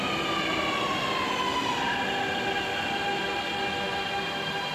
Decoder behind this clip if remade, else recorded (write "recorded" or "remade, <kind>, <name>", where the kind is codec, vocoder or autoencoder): recorded